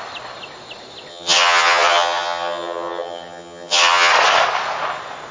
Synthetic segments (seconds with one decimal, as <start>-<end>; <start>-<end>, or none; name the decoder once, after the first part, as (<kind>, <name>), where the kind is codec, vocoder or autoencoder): 1.1-4.1 (vocoder, HiFi-GAN)